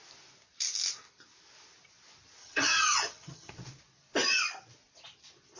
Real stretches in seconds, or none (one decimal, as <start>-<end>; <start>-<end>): 0.0-2.4; 3.5-5.6